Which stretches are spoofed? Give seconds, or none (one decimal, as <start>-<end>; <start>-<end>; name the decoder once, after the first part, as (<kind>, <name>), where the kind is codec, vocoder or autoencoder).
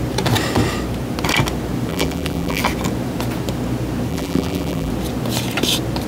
1.9-2.6 (vocoder, BigVGAN v2); 4.1-4.9